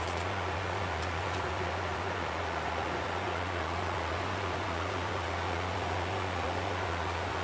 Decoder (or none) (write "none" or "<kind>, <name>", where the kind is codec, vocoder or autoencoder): vocoder, Vocos